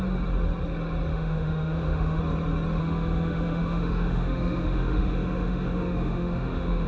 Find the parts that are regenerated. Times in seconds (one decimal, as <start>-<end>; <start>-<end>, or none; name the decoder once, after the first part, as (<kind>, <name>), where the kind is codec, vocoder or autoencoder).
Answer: 1.1-2.2 (autoencoder, DAC-VAE); 2.8-6.9